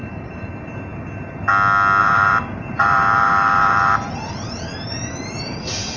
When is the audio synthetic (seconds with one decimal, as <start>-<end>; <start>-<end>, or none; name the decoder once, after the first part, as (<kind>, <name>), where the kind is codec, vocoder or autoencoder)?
0.0-0.5 (vocoder, BigVGAN v2); 2.0-5.6